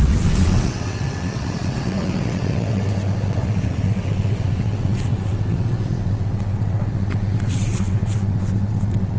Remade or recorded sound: remade